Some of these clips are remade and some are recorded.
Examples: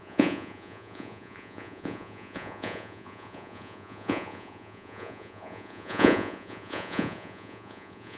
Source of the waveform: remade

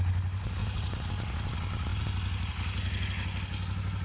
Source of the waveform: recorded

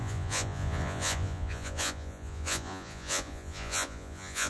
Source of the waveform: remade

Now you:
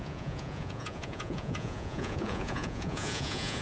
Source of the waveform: remade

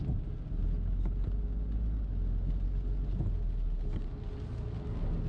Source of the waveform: recorded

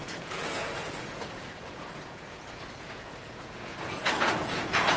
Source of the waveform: remade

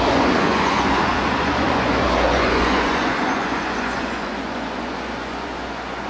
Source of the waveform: remade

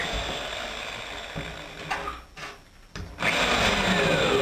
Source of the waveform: recorded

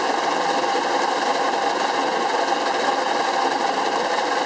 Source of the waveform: recorded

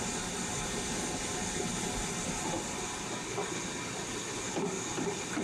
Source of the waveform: recorded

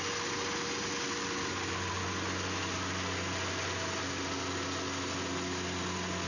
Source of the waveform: recorded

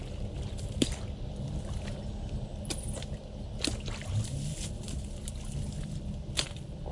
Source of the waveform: recorded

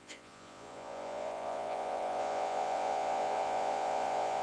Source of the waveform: remade